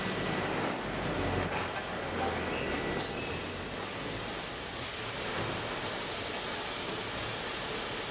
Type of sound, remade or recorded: recorded